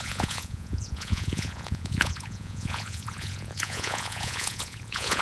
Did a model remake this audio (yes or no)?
yes